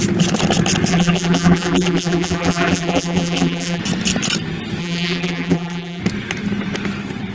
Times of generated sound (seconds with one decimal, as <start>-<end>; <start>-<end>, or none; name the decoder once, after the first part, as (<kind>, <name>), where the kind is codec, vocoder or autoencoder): 0.9-3.8 (vocoder, BigVGAN v2); 4.8-6.0